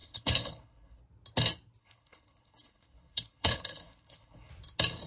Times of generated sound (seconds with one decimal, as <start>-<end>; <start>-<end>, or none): 0.0-1.0; 1.8-4.5